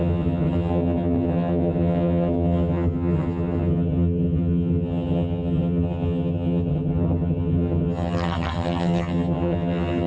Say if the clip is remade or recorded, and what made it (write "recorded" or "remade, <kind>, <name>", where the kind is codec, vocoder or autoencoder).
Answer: remade, vocoder, HiFi-GAN